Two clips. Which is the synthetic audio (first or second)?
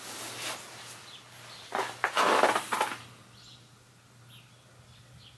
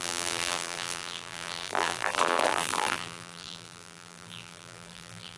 second